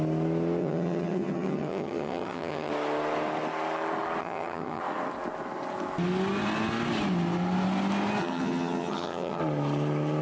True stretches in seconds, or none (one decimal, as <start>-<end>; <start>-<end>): 0.0-0.6; 2.7-4.2; 4.8-8.2; 9.4-10.2